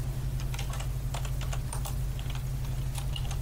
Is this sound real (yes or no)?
yes